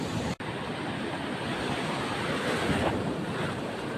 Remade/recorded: recorded